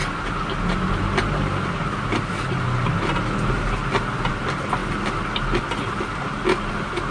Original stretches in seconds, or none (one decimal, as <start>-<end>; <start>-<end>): 0.0-7.1